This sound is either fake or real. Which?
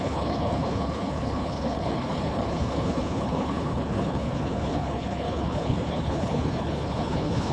fake